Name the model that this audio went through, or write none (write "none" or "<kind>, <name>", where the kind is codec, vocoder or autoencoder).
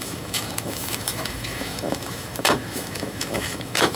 autoencoder, DAC-VAE